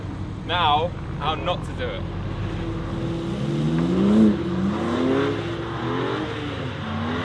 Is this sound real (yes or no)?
yes